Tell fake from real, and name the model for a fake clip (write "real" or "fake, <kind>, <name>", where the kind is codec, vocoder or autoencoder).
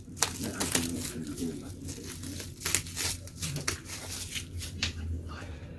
real